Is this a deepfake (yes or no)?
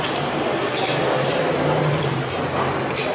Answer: yes